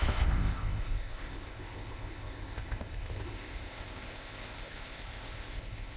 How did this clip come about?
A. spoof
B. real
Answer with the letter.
A